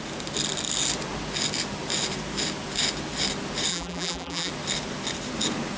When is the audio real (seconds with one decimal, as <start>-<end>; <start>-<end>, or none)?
0.0-3.7; 4.5-5.8